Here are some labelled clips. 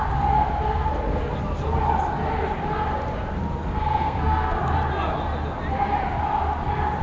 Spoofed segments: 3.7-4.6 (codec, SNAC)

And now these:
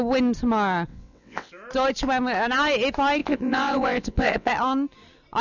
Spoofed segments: 0.9-1.5 (vocoder, WaveNeXt); 3.2-4.5

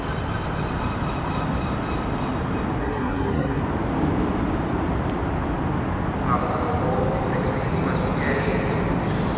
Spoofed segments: 2.8-3.6 (codec, SNAC)

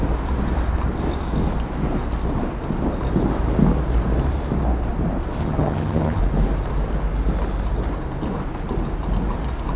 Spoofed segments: 5.4-6.2 (vocoder, HiFi-GAN)